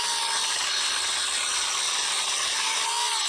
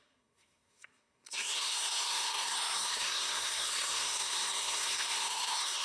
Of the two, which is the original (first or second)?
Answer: first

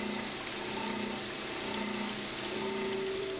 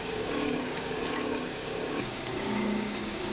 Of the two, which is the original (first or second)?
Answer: first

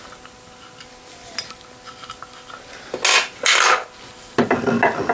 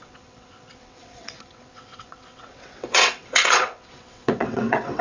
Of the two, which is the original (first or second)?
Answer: first